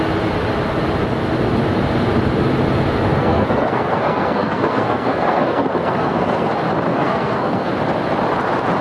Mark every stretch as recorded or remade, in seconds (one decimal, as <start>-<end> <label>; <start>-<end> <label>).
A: 0.0-3.2 recorded; 3.2-6.5 remade; 6.5-6.9 recorded; 6.9-7.7 remade; 7.7-8.8 recorded